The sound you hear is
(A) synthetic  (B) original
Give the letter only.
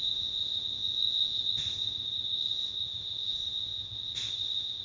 A